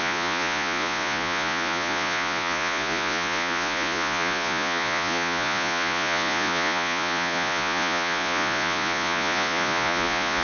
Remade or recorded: remade